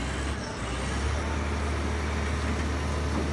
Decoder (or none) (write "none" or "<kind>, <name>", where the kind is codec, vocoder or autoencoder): none